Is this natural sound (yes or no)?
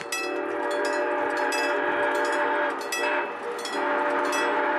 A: yes